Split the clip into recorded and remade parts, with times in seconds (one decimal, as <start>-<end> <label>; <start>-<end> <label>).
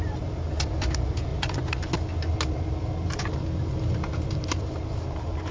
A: 0.0-5.5 recorded